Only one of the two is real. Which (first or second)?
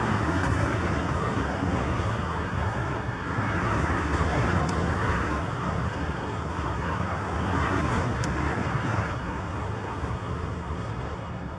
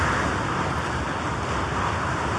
second